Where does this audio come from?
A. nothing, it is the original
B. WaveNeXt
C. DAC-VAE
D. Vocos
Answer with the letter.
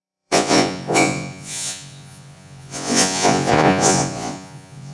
D